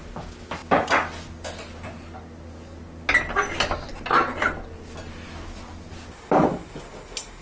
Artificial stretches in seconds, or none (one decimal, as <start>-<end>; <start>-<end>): none